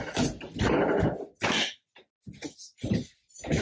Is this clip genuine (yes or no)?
yes